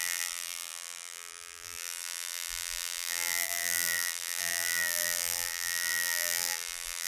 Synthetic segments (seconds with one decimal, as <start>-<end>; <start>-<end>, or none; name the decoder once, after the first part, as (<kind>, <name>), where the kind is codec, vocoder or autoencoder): 0.0-7.1 (vocoder, BigVGAN v2)